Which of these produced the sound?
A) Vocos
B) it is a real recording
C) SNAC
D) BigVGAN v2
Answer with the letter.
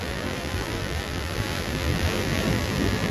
D